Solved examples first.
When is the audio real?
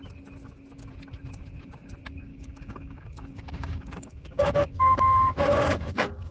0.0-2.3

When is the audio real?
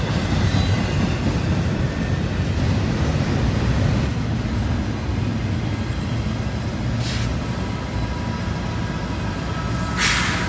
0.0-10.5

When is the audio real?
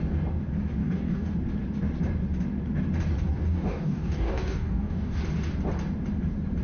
0.0-0.8; 1.3-3.5; 5.2-6.6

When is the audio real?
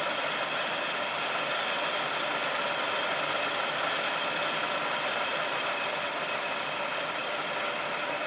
0.0-8.3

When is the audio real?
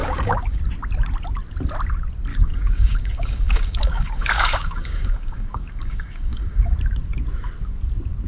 0.6-2.3; 6.7-8.3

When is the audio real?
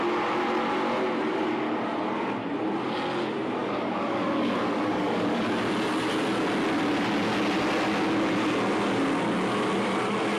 0.0-3.6; 5.4-10.4